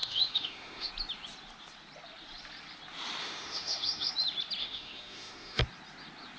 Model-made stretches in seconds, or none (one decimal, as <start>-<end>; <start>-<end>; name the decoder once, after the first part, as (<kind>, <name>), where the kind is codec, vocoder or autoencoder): 0.0-0.9 (autoencoder, DAC-VAE); 3.2-4.1; 4.6-5.6